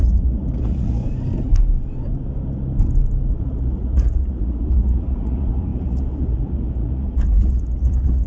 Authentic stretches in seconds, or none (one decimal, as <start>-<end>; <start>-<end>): 1.0-3.3